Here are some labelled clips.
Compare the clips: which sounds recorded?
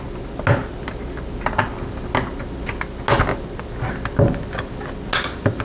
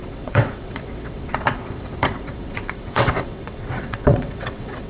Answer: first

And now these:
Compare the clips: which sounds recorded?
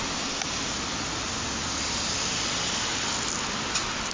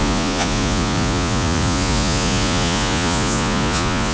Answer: first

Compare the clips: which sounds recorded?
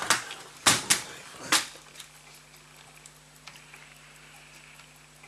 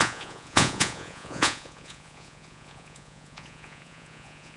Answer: first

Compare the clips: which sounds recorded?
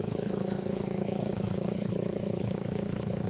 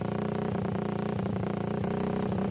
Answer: second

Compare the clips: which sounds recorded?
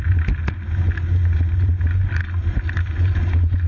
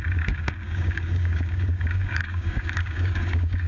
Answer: first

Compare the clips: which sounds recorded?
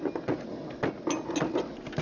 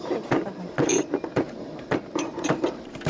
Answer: first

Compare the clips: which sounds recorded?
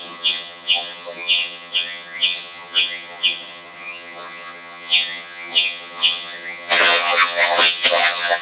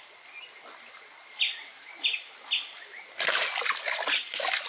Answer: second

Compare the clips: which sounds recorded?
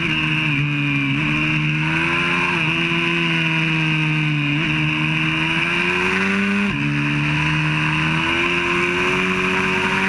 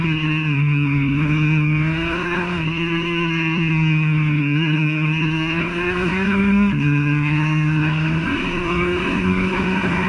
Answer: first